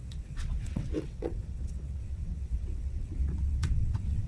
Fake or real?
fake